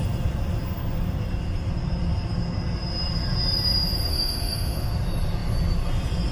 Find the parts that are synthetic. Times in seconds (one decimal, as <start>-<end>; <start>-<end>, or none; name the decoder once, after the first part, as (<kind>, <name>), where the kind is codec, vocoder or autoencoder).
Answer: 4.1-4.9 (autoencoder, DAC-VAE)